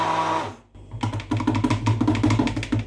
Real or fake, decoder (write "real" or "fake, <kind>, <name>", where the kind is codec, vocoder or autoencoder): real